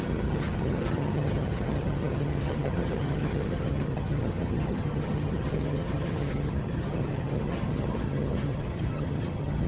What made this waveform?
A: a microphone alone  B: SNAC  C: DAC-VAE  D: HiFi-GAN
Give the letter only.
D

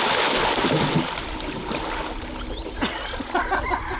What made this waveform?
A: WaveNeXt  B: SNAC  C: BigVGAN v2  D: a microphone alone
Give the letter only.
D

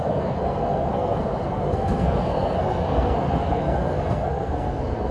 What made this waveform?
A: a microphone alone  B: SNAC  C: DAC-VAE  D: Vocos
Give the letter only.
B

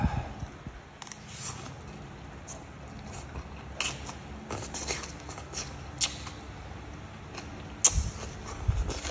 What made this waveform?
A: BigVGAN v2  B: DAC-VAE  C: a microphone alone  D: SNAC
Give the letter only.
C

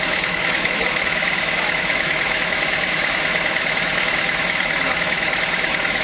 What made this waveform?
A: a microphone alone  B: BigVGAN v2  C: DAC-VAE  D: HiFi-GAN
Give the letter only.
C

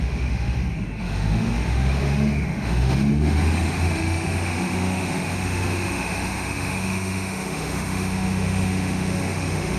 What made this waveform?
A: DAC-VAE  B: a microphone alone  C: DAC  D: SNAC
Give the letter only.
A